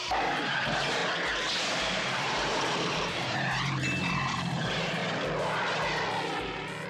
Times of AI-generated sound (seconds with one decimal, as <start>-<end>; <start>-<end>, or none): 0.0-1.0; 1.6-5.0